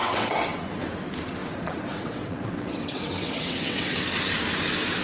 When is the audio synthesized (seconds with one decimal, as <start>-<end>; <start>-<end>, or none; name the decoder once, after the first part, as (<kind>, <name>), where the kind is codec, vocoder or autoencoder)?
0.0-0.7 (vocoder, WaveNeXt); 1.4-4.0